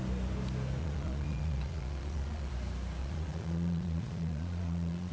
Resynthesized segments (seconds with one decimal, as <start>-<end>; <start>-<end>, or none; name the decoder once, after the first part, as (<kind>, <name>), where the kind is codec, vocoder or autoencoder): 0.8-2.5 (vocoder, Vocos); 3.0-5.1